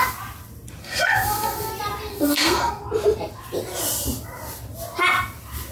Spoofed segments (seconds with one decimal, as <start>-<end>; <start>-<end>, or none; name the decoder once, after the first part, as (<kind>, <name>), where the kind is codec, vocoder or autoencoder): 0.8-1.7 (codec, SNAC); 2.1-2.8